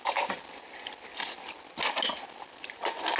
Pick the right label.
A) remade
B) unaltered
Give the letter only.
B